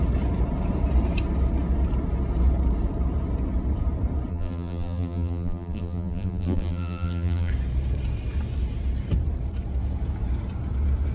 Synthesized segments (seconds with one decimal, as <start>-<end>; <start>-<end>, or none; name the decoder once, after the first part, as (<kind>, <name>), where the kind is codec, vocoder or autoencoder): 4.3-7.5 (vocoder, BigVGAN v2)